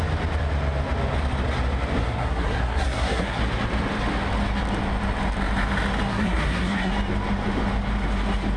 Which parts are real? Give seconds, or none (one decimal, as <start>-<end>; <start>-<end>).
0.0-2.0; 3.4-6.1; 6.9-8.6